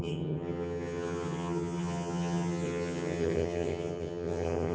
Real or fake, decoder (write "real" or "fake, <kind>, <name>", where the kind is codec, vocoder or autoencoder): fake, vocoder, HiFi-GAN